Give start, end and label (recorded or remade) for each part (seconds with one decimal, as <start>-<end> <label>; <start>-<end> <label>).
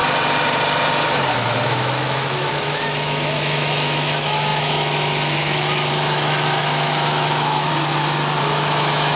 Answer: 0.0-1.3 recorded; 1.3-7.7 remade; 7.7-8.4 recorded; 8.4-9.2 remade